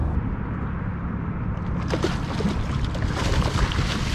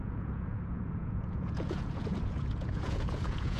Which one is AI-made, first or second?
second